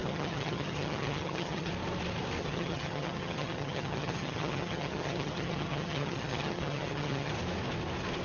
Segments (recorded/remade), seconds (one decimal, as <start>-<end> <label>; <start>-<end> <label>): 0.0-1.7 remade; 1.7-2.4 recorded; 2.4-7.3 remade; 7.3-8.2 recorded